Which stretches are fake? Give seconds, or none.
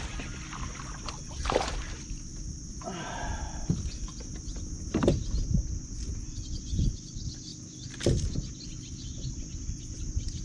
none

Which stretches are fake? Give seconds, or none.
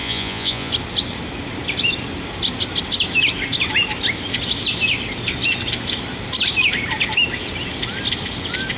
0.0-0.7 (vocoder, Vocos)